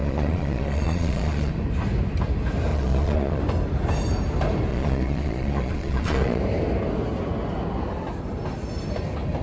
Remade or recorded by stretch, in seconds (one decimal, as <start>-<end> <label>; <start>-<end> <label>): 0.0-1.5 remade; 1.5-2.7 recorded; 2.7-3.4 remade; 3.4-4.7 recorded; 4.7-6.4 remade; 6.4-9.4 recorded